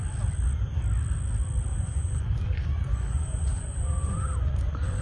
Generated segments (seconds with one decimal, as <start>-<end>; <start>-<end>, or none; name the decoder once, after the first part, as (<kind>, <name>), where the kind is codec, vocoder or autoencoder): 1.7-5.0 (vocoder, Vocos)